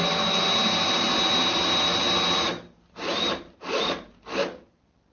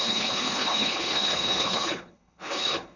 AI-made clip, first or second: second